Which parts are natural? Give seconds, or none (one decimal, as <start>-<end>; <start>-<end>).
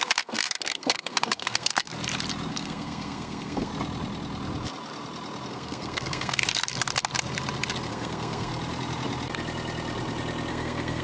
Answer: 1.9-2.5; 3.7-5.5; 6.4-7.9; 8.5-10.5